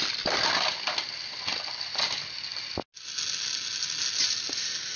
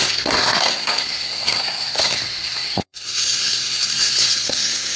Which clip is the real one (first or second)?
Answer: first